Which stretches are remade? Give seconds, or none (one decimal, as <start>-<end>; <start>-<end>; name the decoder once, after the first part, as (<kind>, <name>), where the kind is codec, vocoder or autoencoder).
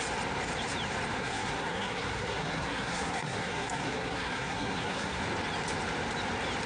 1.2-5.2 (codec, SNAC)